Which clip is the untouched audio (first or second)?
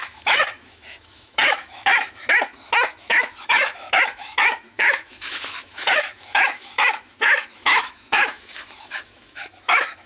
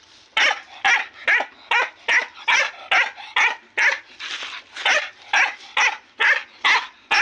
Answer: second